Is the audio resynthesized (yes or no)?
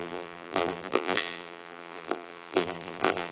yes